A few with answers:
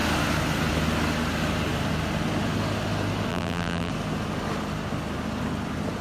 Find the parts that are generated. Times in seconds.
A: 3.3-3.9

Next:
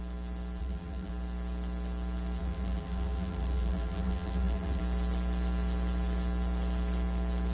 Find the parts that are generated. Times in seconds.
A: 0.6-1.1; 2.4-4.8

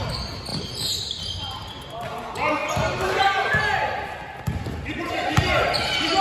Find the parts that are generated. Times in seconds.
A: 0.5-1.0

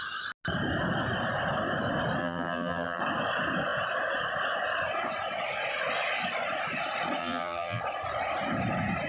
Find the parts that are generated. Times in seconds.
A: 2.2-3.0; 7.2-7.8

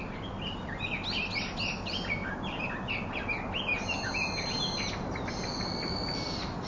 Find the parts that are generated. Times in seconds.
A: none

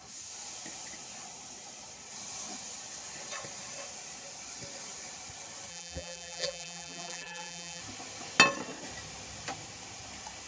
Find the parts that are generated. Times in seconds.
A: 5.7-7.8

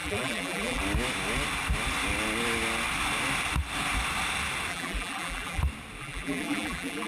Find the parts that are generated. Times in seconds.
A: 0.0-0.8; 4.7-5.6; 6.0-7.1